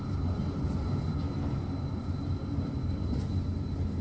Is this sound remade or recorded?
recorded